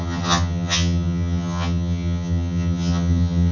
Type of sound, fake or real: fake